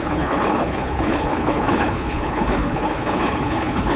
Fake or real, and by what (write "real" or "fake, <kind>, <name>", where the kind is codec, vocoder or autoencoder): fake, codec, HILCodec